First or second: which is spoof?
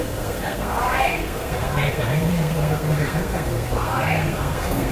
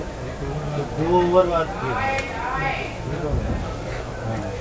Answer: first